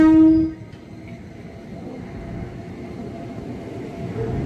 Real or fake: real